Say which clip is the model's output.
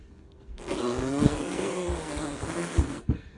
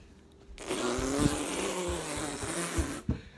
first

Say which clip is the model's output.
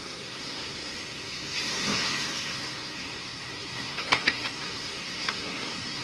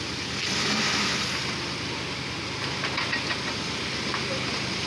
first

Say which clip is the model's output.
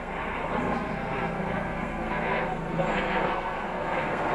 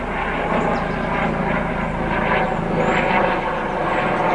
first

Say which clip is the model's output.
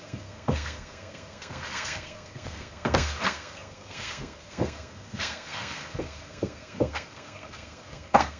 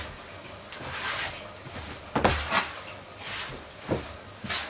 first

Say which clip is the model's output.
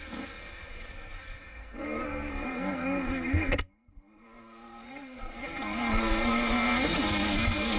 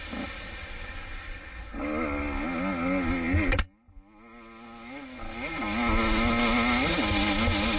first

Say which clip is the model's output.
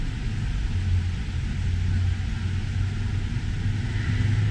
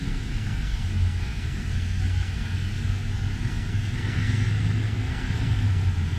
second